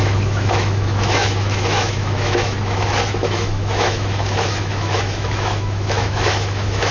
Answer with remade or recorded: remade